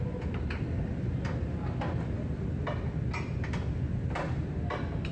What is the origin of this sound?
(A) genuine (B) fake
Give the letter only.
A